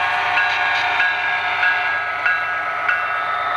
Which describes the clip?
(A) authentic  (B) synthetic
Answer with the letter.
A